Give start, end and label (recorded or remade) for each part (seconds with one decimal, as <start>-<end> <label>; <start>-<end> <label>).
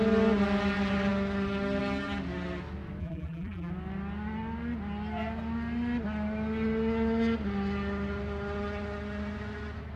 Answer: 0.0-3.0 recorded; 3.0-3.7 remade; 3.7-10.0 recorded